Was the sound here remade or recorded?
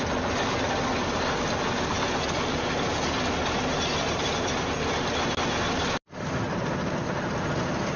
recorded